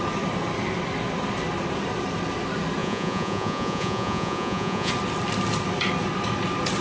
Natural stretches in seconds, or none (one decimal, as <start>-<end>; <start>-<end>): 0.0-2.8; 4.9-6.8